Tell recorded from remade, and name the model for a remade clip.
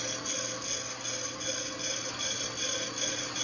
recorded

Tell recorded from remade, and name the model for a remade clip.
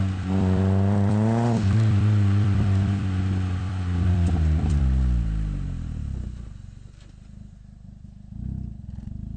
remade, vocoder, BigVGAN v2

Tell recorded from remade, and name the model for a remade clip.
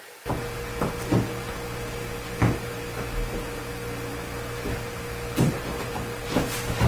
recorded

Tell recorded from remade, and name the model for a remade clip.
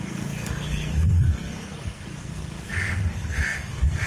remade, codec, SNAC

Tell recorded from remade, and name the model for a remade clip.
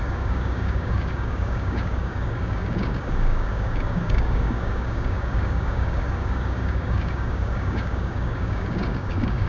remade, codec, DAC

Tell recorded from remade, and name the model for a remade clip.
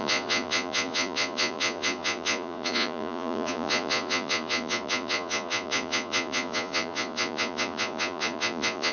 remade, vocoder, Vocos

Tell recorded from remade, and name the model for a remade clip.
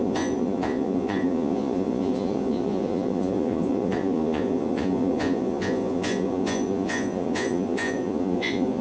remade, vocoder, Vocos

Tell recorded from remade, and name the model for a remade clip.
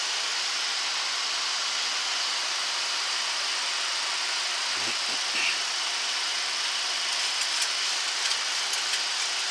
recorded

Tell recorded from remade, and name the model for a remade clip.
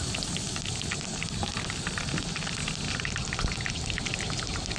recorded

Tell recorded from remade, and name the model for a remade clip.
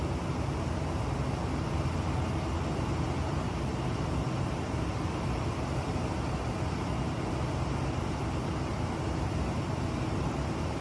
recorded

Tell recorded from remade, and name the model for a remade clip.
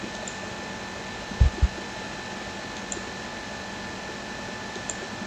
recorded